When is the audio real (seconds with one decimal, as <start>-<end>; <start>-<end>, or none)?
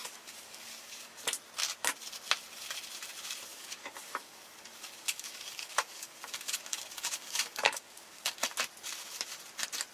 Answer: 1.2-3.5; 8.3-9.9